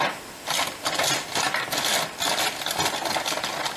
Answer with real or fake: real